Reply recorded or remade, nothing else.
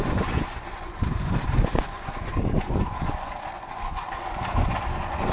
remade